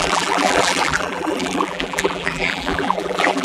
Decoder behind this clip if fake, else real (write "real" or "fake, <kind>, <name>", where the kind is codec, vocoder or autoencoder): fake, vocoder, BigVGAN v2